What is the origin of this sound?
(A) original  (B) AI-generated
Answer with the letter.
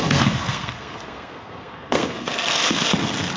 B